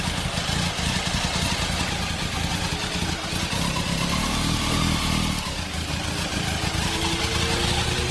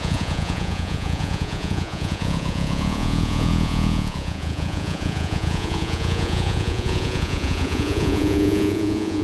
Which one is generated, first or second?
second